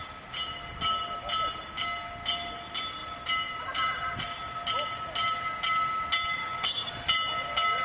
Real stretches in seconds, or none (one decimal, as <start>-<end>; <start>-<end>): 0.0-6.4; 6.9-7.8